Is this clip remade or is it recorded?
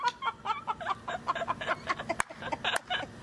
recorded